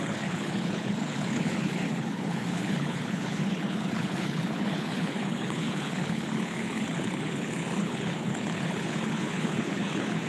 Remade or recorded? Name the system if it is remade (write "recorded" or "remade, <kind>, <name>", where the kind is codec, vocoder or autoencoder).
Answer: remade, codec, HILCodec